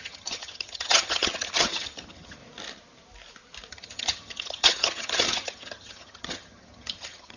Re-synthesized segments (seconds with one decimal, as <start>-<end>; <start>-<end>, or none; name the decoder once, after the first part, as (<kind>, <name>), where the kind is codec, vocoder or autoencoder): 0.0-2.4 (vocoder, HiFi-GAN); 3.7-7.4